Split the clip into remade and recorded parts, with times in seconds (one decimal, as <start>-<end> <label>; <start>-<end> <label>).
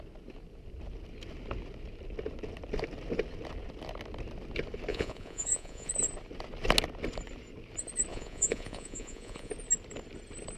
0.0-4.9 recorded; 4.9-5.9 remade; 5.9-8.1 recorded; 8.1-9.5 remade; 9.5-10.6 recorded